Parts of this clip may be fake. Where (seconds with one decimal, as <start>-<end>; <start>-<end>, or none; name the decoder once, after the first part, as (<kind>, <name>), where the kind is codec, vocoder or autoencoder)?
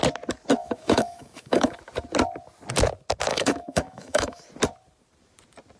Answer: 0.6-1.8 (autoencoder, DAC-VAE); 3.3-4.4